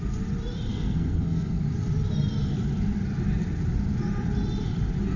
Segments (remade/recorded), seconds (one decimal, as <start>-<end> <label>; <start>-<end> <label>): 0.0-0.7 recorded; 0.7-1.6 remade; 1.6-5.2 recorded